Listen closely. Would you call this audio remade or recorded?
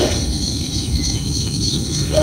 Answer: remade